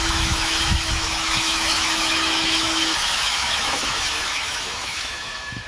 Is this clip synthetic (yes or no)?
yes